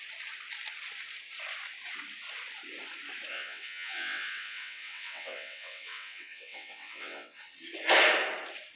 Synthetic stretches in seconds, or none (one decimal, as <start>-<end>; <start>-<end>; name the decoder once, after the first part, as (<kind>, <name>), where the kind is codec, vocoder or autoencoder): 3.3-7.4 (vocoder, WaveNeXt)